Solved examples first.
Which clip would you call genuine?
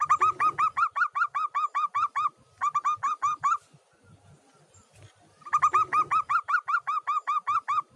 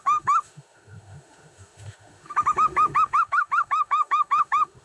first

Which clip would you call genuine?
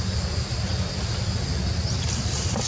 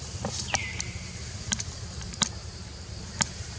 first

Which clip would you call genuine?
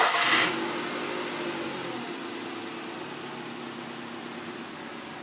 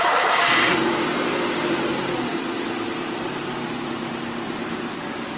first